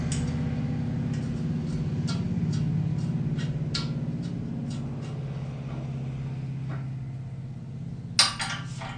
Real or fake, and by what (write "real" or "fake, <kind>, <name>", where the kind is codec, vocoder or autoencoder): real